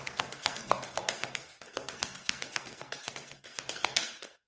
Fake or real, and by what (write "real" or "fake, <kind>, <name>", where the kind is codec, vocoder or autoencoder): fake, codec, SNAC